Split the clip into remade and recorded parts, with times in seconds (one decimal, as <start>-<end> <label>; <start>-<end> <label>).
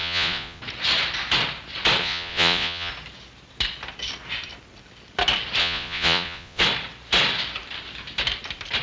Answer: 0.0-0.6 remade; 0.6-2.0 recorded; 2.0-2.9 remade; 2.9-5.6 recorded; 5.6-6.6 remade; 6.6-8.8 recorded